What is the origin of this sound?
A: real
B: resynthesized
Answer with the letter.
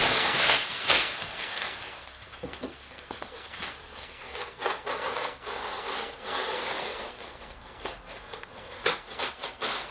B